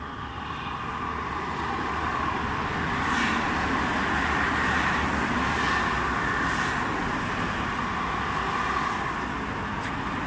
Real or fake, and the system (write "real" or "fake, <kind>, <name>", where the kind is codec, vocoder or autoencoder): real